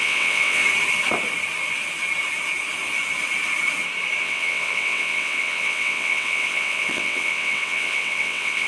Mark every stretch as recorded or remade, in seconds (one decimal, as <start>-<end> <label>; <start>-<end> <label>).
0.0-0.6 remade; 0.6-4.2 recorded; 4.2-8.7 remade